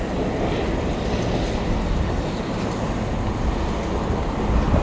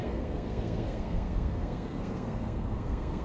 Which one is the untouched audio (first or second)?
first